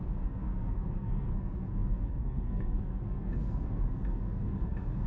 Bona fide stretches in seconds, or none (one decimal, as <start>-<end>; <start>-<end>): none